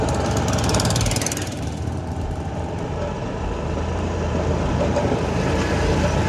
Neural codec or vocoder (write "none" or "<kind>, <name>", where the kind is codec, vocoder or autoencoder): vocoder, BigVGAN v2